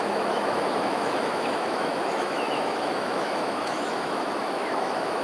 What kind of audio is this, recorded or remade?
remade